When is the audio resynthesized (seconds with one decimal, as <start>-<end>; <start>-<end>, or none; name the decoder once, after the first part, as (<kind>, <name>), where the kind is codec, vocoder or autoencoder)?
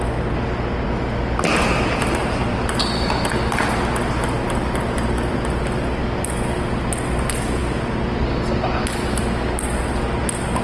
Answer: 2.2-3.3 (vocoder, BigVGAN v2)